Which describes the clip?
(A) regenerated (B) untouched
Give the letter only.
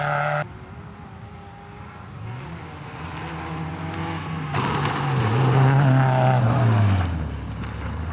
B